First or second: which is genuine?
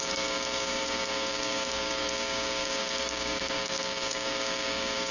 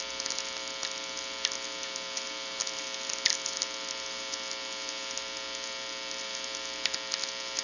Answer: second